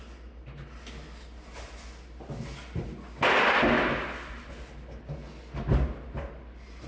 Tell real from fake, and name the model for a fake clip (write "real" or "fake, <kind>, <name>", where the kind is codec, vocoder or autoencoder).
real